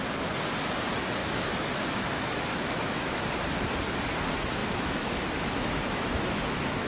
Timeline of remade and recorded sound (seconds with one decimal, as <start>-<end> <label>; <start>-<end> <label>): 0.0-1.2 recorded; 1.2-3.2 remade; 3.2-4.6 recorded; 4.6-6.9 remade